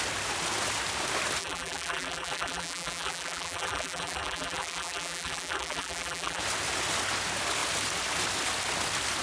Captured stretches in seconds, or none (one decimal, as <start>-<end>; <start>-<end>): 0.0-1.4; 6.4-9.2

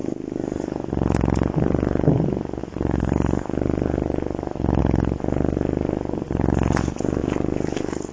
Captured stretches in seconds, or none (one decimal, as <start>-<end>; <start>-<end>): 0.0-8.1

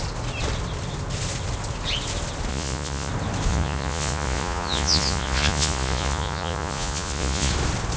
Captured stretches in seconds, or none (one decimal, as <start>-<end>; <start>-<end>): 0.0-2.5; 3.1-3.5; 7.5-8.0

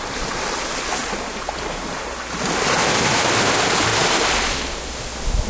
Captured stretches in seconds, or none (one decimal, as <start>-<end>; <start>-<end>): 0.0-1.0; 2.1-3.9; 4.5-5.5

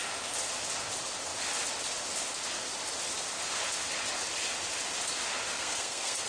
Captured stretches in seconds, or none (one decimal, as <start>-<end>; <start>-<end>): 0.0-5.5

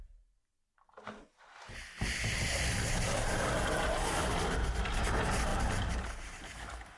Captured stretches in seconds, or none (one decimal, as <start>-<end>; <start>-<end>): 0.0-5.5; 6.5-7.0

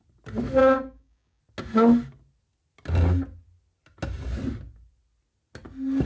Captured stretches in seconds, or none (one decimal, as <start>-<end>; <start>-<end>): 0.0-0.6; 1.4-6.1